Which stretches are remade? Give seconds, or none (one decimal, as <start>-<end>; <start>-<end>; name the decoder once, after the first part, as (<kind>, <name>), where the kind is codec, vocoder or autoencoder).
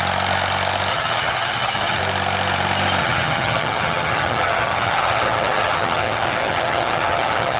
0.9-2.0 (vocoder, HiFi-GAN); 3.0-7.6